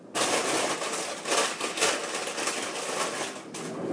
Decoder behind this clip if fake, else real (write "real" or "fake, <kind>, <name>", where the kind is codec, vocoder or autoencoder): real